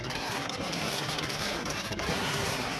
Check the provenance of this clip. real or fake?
fake